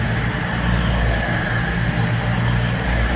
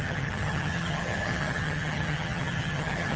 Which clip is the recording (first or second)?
first